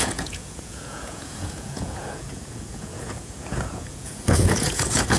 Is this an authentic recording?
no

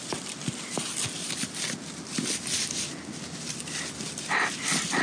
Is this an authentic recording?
yes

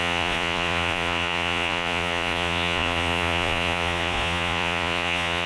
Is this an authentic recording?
no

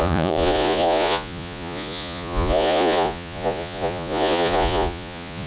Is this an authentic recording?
no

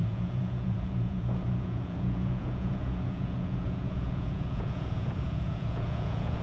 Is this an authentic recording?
no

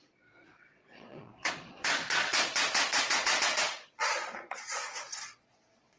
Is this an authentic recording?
no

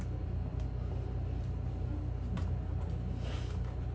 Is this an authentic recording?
yes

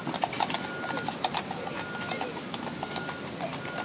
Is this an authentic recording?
yes